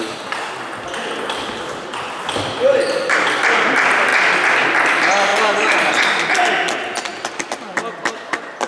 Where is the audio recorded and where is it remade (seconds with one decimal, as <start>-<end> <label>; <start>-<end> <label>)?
0.0-7.1 recorded; 7.1-8.0 remade; 8.0-8.7 recorded